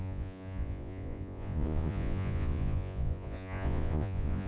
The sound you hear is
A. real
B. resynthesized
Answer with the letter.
B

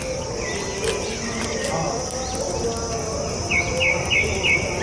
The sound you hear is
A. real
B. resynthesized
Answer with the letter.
A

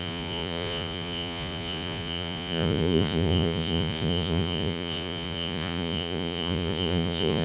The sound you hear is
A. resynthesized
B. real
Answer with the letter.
A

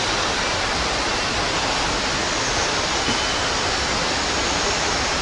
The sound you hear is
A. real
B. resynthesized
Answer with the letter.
A